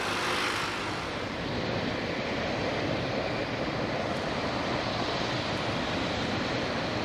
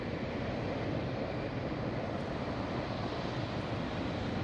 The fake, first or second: first